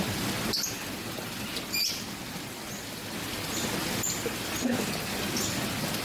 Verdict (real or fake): real